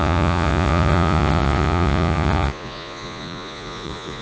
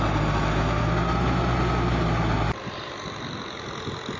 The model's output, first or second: first